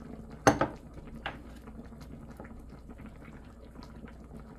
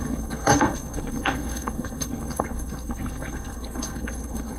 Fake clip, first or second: second